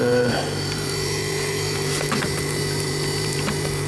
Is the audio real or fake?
fake